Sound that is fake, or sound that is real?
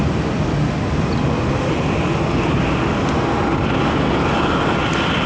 real